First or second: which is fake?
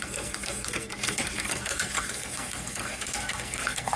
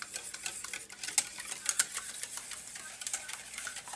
first